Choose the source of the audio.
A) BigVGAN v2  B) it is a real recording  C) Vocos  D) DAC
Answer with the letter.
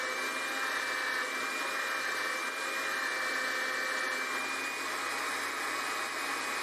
B